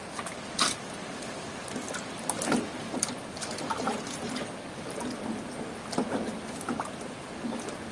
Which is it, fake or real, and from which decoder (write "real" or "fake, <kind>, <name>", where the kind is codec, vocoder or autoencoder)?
real